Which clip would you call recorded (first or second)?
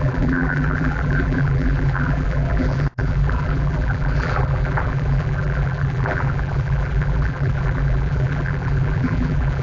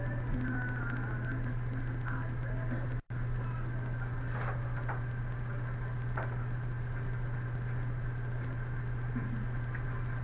second